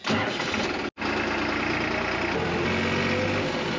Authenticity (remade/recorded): recorded